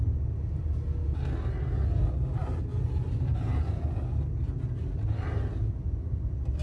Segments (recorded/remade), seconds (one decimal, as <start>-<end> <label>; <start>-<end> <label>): 0.0-6.6 recorded